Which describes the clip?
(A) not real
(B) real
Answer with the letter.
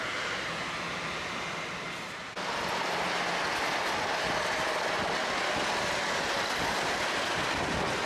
B